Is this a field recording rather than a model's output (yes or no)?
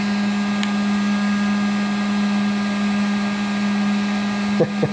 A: yes